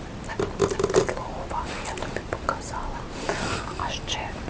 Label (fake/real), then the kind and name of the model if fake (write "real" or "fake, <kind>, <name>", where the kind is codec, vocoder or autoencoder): real